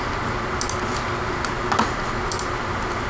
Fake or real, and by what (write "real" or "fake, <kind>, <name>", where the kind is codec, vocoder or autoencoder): real